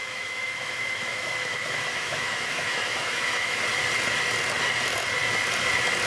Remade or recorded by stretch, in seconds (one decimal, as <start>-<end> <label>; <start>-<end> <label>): 0.0-3.6 remade; 3.6-6.1 recorded